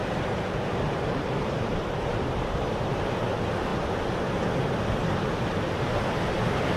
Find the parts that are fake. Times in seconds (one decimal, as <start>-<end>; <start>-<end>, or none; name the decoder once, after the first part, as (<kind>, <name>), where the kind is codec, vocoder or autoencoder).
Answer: 0.0-2.8 (vocoder, BigVGAN v2)